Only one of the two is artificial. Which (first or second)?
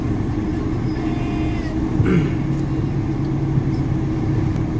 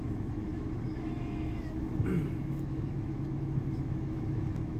second